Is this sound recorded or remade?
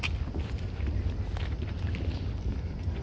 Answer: recorded